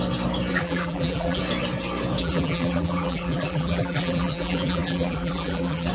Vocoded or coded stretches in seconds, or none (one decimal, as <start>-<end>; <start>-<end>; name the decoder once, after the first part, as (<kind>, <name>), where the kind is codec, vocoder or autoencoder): 0.5-1.4 (vocoder, BigVGAN v2); 2.2-5.9